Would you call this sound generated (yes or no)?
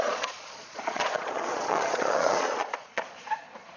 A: yes